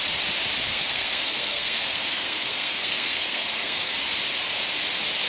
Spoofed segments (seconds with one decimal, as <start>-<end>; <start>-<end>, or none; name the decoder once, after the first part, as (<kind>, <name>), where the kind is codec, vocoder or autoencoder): 0.7-3.9 (codec, SNAC)